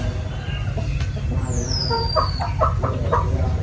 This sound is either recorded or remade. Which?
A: recorded